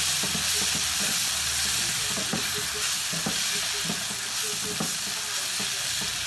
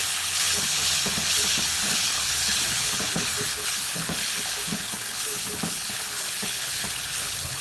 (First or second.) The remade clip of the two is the second